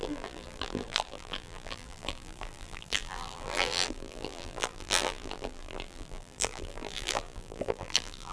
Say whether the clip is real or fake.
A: fake